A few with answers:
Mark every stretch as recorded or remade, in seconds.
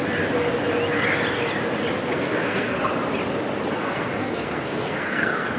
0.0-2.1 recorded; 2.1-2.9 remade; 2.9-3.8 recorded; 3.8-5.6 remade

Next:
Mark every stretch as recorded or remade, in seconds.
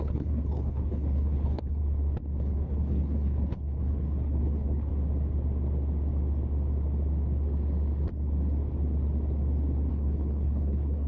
0.0-1.8 remade; 1.8-2.4 recorded; 2.4-4.9 remade; 4.9-9.9 recorded; 9.9-11.1 remade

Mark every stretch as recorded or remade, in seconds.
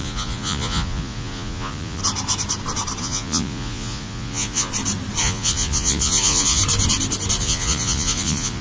0.0-2.0 remade; 2.0-3.0 recorded; 3.0-4.7 remade; 4.7-5.2 recorded; 5.2-6.6 remade; 6.6-7.4 recorded; 7.4-8.6 remade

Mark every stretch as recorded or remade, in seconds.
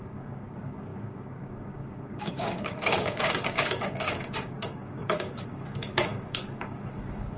0.0-7.4 remade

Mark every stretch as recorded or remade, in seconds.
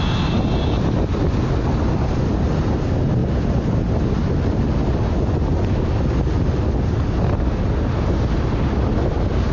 0.0-9.5 recorded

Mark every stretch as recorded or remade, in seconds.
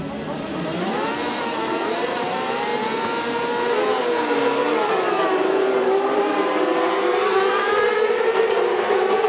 0.0-2.7 remade; 2.7-4.9 recorded; 4.9-9.3 remade